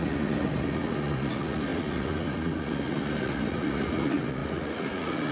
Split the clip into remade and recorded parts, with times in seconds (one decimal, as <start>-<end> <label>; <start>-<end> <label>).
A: 0.0-5.3 remade